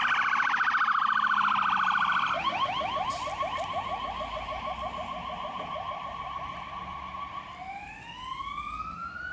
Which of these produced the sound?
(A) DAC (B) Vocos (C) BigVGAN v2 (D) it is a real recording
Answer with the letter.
D